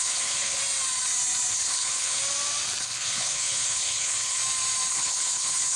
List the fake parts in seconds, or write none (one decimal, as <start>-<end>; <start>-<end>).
0.0-0.6; 1.5-2.2; 2.8-4.4; 4.9-5.8